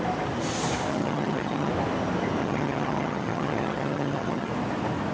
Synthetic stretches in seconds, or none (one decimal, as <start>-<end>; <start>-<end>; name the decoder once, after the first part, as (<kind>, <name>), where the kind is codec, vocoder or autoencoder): 0.9-1.7 (vocoder, HiFi-GAN); 2.4-4.5